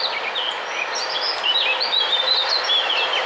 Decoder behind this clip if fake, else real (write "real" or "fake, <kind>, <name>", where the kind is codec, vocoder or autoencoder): real